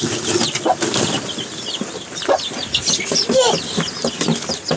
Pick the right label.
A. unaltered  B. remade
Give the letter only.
A